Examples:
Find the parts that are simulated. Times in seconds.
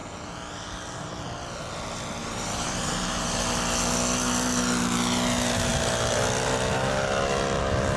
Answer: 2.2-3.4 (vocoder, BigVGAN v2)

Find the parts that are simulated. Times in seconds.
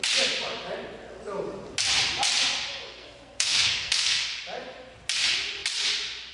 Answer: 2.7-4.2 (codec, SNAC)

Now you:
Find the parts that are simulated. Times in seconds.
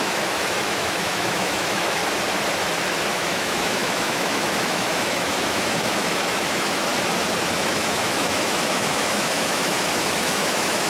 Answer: 0.0-2.0 (autoencoder, DAC-VAE); 3.1-6.9; 7.4-10.9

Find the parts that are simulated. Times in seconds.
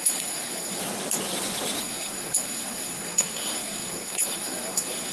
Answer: 0.0-0.8 (codec, SNAC); 1.8-5.1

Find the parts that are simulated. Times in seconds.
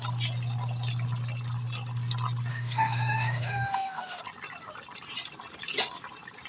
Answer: 2.5-4.2 (autoencoder, DAC-VAE)